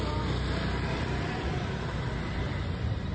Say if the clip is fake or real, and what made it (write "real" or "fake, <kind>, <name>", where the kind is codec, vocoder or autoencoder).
real